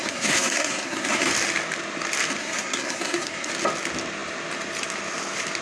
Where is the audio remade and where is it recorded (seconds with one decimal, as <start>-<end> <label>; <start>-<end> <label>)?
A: 0.0-1.3 remade; 1.3-2.4 recorded; 2.4-3.5 remade; 3.5-5.6 recorded